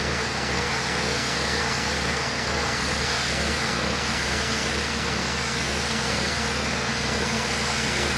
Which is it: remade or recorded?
remade